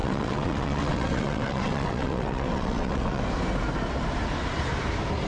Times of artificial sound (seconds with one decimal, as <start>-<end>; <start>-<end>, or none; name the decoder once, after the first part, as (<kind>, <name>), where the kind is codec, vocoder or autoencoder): 0.0-3.2 (vocoder, WaveNeXt)